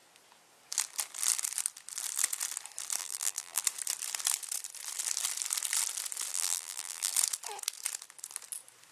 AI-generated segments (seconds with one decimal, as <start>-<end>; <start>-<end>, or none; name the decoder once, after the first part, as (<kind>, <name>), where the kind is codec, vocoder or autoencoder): 3.0-3.6 (vocoder, BigVGAN v2); 6.3-7.1